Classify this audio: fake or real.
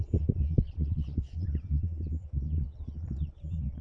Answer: fake